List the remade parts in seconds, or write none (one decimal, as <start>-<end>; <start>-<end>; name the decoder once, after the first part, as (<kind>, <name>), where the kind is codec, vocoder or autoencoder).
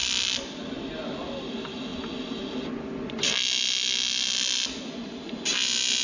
none